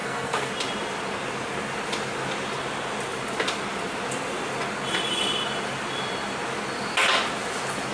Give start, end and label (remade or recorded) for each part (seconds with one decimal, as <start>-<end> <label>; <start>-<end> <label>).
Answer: 0.0-0.5 remade; 0.5-7.9 recorded